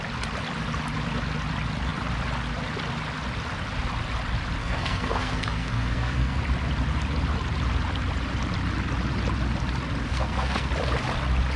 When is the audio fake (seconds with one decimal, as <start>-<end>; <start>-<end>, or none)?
4.6-6.4; 10.1-10.7

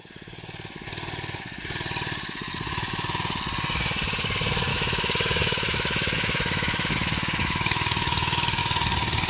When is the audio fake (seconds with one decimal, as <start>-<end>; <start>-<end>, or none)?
4.7-8.6